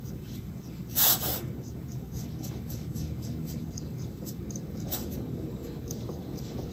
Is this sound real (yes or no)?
no